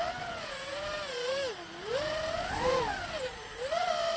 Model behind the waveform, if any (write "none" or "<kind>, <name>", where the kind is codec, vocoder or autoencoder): none